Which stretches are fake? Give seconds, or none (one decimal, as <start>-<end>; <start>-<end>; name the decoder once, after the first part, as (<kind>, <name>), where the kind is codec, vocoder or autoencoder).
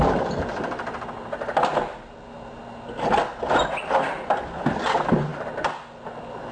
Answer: none